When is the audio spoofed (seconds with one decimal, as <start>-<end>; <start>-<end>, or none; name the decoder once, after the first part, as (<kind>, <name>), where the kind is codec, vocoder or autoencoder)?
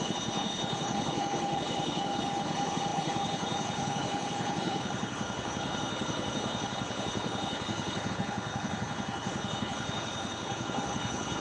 0.0-11.4 (codec, HILCodec)